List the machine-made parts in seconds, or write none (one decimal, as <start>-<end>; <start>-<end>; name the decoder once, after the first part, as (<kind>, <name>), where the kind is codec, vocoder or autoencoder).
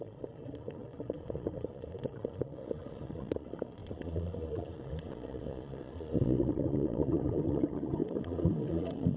0.0-9.2 (vocoder, Vocos)